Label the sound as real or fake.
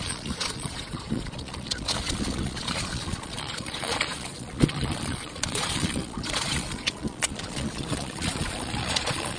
fake